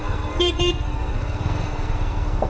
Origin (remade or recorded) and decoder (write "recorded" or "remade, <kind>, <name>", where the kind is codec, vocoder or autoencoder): remade, codec, SNAC